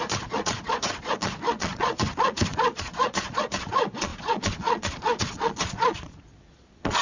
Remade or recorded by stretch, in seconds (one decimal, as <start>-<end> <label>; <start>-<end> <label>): 0.0-7.0 remade